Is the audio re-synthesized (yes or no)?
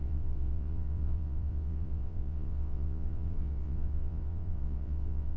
yes